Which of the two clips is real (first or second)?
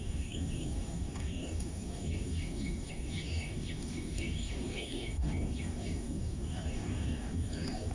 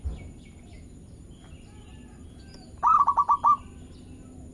second